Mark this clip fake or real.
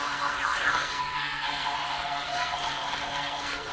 fake